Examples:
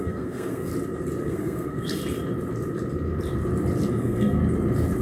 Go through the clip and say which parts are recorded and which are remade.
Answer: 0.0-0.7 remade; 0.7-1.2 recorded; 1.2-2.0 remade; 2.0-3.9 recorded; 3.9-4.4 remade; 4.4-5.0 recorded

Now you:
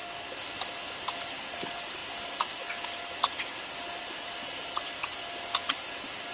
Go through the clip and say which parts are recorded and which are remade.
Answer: 0.0-6.3 recorded